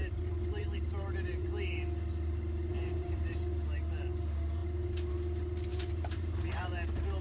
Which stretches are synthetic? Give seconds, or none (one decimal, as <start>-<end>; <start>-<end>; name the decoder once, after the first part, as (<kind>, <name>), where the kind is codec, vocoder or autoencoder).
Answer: 0.0-1.5 (vocoder, BigVGAN v2); 2.7-3.4; 5.7-7.2